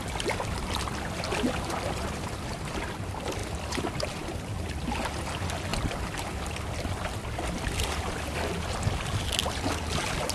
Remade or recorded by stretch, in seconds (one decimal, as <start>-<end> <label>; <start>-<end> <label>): 0.0-10.3 recorded